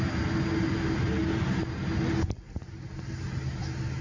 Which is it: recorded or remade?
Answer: recorded